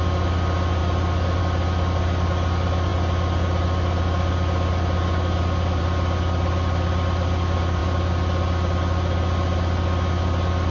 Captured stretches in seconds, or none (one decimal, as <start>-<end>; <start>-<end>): 0.0-10.7